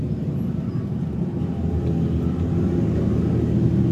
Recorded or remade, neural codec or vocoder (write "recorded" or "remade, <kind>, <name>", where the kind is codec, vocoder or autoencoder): recorded